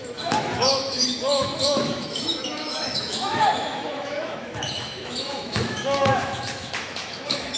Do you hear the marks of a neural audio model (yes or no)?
yes